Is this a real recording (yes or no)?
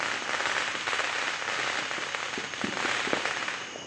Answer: yes